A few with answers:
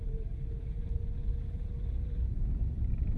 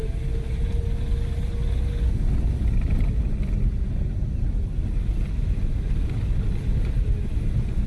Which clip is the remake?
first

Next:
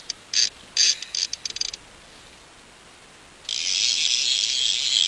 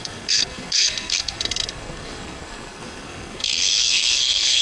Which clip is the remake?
second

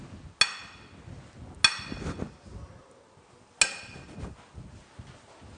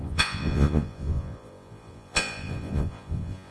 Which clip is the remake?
second